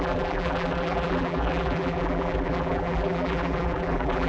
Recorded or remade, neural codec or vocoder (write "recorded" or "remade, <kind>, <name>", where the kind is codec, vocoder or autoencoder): remade, vocoder, BigVGAN v2